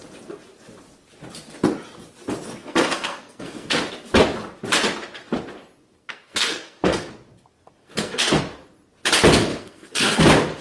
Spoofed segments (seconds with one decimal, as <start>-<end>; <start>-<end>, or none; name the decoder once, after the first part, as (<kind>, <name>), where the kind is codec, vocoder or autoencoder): 2.6-3.9 (codec, SNAC); 6.0-7.1; 7.8-8.4; 9.5-10.2